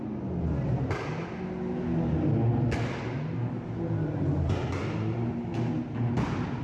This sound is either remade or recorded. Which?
recorded